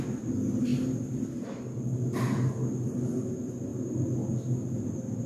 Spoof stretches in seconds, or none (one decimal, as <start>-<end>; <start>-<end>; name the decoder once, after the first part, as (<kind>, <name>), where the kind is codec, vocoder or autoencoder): none